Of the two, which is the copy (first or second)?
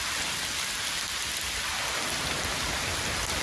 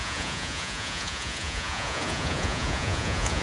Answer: second